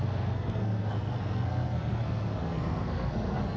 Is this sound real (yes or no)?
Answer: no